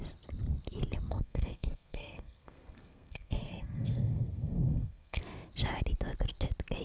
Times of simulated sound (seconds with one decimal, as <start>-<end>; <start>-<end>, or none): 1.1-5.2